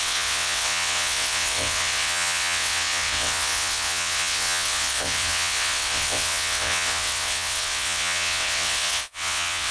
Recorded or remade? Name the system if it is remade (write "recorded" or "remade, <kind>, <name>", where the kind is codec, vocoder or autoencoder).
remade, vocoder, WaveNeXt